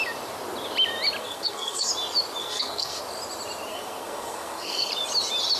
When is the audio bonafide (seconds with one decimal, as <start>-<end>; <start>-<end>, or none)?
0.0-1.2; 1.9-2.4; 3.0-3.7; 4.9-5.6

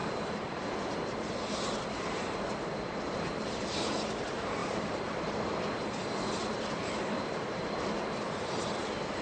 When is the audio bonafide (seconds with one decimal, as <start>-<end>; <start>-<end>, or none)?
1.6-4.6; 8.6-9.2

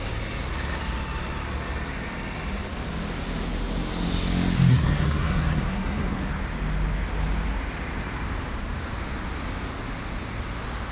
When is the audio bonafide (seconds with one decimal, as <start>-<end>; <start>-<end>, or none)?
0.0-4.7; 6.3-10.9

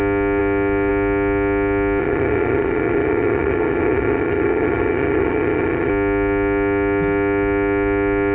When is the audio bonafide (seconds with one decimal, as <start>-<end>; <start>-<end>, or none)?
0.0-2.0; 5.9-8.3

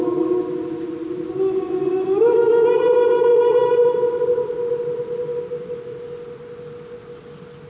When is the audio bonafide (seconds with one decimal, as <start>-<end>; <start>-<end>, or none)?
0.0-7.7

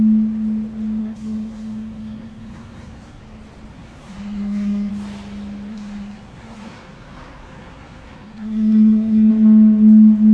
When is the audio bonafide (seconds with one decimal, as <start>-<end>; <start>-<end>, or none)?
0.0-1.0; 3.2-3.7; 4.9-5.7; 9.3-10.3